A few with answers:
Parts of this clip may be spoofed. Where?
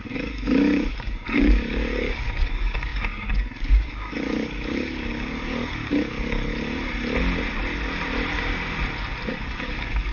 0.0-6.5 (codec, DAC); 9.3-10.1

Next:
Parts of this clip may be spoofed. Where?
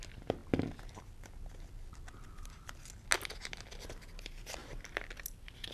4.6-5.7 (vocoder, BigVGAN v2)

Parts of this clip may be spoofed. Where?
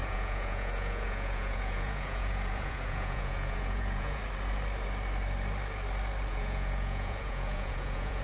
0.0-4.2 (vocoder, Vocos); 6.3-8.2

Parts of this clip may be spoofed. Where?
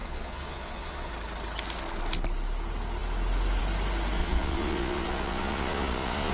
0.0-1.1 (vocoder, Vocos); 4.2-6.3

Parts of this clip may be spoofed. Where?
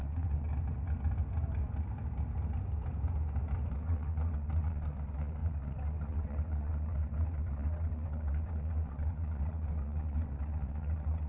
0.0-0.5 (vocoder, WaveNeXt); 3.7-11.3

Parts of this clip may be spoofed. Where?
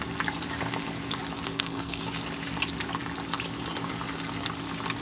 1.5-2.0 (codec, SNAC)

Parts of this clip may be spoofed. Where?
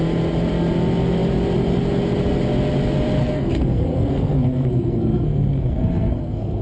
3.2-6.6 (codec, SNAC)